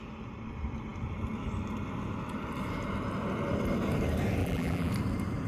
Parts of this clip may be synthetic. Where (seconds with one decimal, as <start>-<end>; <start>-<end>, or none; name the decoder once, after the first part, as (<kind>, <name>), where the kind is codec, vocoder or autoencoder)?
4.4-4.9 (vocoder, BigVGAN v2)